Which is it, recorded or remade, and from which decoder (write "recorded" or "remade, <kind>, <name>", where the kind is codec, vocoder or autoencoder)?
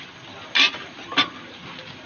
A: recorded